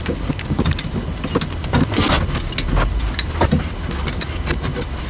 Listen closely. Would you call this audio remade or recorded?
recorded